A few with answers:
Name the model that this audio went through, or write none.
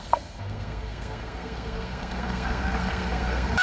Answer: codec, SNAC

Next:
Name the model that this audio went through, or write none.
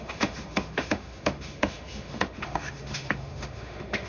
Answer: autoencoder, DAC-VAE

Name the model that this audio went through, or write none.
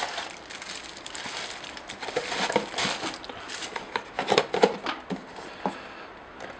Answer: none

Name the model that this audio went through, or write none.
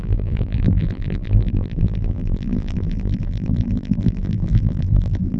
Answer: vocoder, BigVGAN v2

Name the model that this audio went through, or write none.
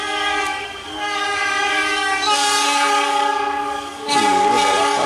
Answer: codec, DAC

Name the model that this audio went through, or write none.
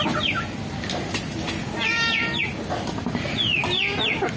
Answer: none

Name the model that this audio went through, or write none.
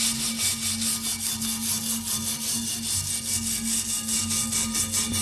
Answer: none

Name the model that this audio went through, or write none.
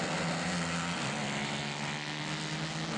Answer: none